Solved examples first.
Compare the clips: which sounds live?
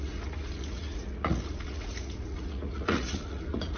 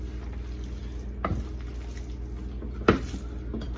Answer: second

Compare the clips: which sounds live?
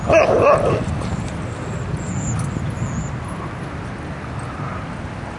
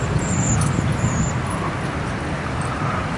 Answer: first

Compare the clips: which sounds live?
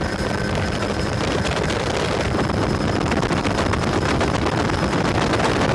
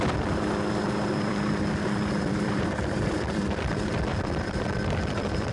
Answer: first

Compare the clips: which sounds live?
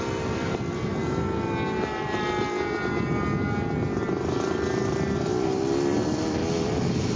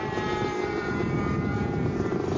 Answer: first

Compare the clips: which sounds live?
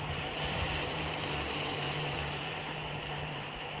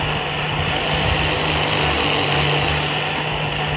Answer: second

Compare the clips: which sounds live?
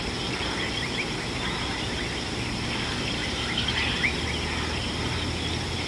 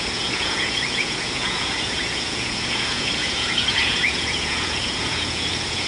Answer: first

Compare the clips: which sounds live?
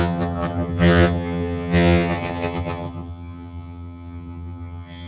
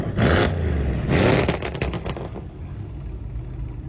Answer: second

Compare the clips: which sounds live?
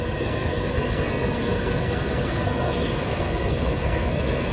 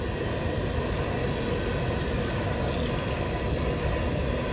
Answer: second